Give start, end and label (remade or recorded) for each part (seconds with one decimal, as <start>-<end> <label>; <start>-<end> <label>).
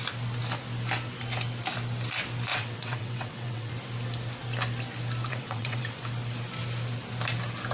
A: 0.0-2.5 recorded; 2.5-3.7 remade; 3.7-5.3 recorded; 5.3-5.9 remade; 5.9-7.7 recorded